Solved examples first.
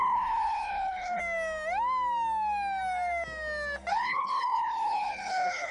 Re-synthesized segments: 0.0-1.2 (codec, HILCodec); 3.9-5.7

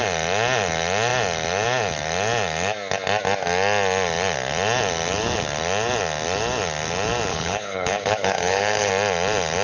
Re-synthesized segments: 7.3-8.9 (codec, HILCodec)

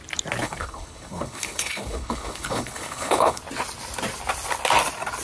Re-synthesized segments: 0.4-3.4 (codec, HILCodec)